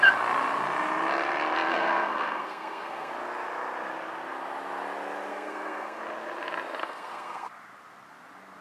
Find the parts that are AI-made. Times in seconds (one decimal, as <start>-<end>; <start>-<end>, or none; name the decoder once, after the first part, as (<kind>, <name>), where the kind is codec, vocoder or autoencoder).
1.7-3.1 (codec, SNAC); 5.3-6.0; 6.8-7.5